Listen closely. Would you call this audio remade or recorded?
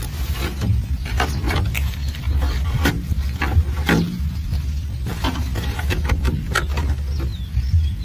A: remade